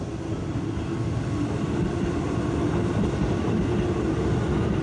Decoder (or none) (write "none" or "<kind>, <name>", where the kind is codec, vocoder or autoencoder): none